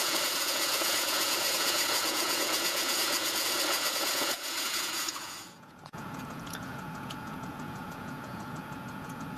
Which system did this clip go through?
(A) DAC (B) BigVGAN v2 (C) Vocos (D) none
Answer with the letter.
C